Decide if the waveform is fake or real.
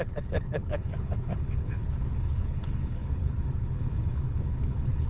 fake